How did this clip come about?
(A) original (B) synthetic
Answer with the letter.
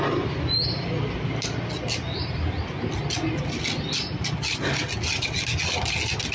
A